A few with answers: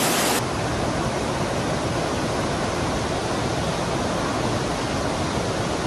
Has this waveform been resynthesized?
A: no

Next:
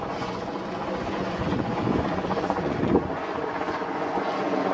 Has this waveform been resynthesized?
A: yes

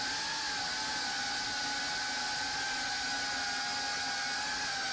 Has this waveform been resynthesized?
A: no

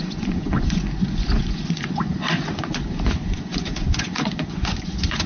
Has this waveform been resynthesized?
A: yes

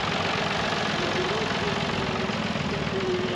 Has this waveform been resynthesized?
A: no